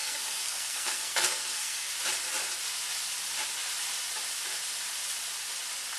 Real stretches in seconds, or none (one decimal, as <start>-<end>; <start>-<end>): 1.9-6.0

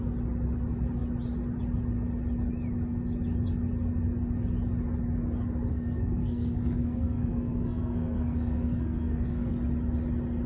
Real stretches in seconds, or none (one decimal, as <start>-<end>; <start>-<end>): 0.0-5.7; 9.5-10.5

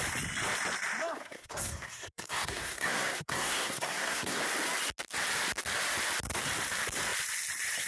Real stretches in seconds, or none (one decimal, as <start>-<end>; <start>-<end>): 0.0-1.2; 4.4-7.9

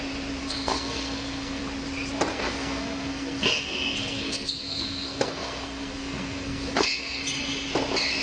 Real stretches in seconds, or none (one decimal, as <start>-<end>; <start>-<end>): 0.0-0.4; 1.6-2.3; 7.2-8.2

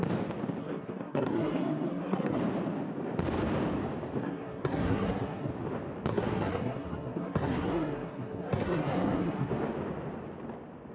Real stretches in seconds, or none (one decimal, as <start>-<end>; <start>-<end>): 0.0-0.6; 2.4-4.2; 5.5-6.1; 9.5-10.9

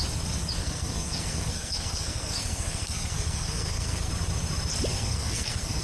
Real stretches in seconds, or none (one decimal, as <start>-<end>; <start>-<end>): 0.0-0.6; 4.1-4.9

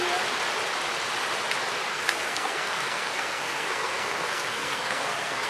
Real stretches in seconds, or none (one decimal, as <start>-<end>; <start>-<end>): 0.0-1.9

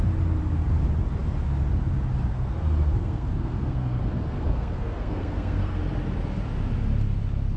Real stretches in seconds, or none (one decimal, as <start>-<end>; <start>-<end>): 0.0-2.3; 5.8-7.6